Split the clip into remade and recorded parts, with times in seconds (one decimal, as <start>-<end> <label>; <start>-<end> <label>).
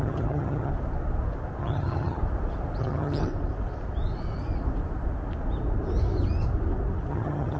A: 0.0-0.7 remade; 0.7-1.6 recorded; 1.6-2.2 remade; 2.2-2.8 recorded; 2.8-3.3 remade; 3.3-7.1 recorded; 7.1-7.6 remade